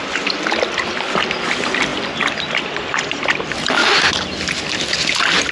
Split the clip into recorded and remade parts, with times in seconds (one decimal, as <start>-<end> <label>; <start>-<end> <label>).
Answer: 0.0-1.9 remade; 1.9-2.6 recorded; 2.6-3.8 remade; 3.8-5.1 recorded; 5.1-5.5 remade